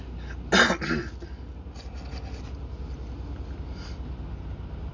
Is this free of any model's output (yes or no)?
yes